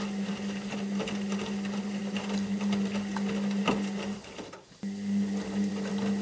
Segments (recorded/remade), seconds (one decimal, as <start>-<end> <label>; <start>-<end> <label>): 0.0-6.2 recorded